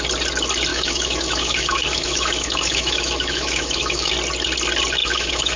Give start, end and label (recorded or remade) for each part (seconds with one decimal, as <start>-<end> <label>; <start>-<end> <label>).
0.0-0.7 recorded; 0.7-4.1 remade; 4.1-5.0 recorded; 5.0-5.6 remade